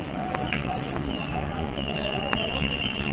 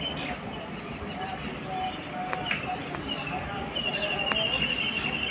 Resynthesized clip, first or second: first